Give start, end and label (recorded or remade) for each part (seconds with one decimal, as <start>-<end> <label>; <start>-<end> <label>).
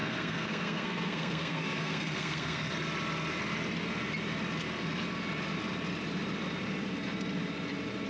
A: 0.0-2.7 remade; 2.7-8.1 recorded